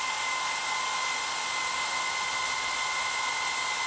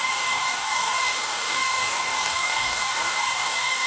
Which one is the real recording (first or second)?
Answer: first